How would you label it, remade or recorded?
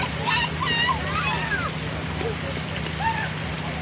recorded